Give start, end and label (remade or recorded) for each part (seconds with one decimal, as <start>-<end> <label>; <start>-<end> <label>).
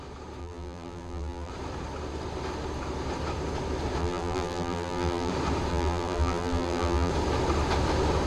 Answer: 0.0-0.4 recorded; 0.4-1.5 remade; 1.5-4.0 recorded; 4.0-5.3 remade; 5.3-5.7 recorded; 5.7-7.1 remade; 7.1-8.3 recorded